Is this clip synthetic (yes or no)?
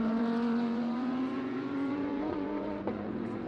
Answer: yes